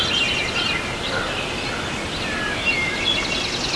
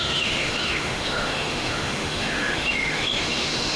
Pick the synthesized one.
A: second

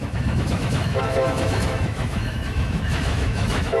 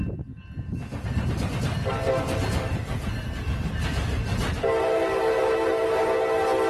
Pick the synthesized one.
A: first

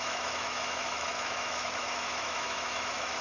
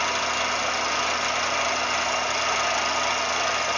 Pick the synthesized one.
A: first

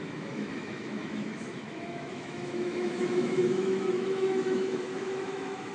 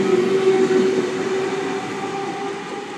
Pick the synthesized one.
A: first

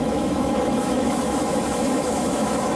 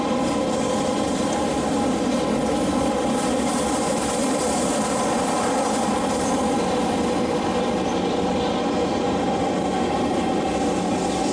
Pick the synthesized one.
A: first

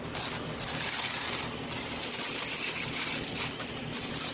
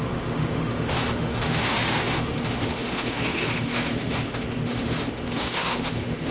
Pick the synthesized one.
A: second